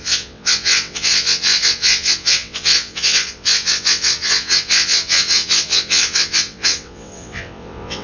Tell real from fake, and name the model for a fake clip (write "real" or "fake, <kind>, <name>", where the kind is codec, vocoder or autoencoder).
fake, vocoder, WaveNeXt